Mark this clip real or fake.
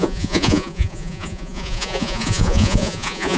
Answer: fake